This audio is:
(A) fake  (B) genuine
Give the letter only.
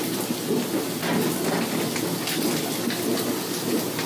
B